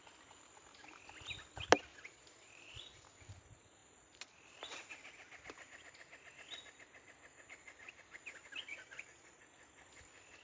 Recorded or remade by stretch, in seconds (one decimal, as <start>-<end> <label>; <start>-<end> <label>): 0.0-1.9 recorded; 1.9-3.0 remade; 3.0-8.7 recorded; 8.7-9.4 remade; 9.4-10.4 recorded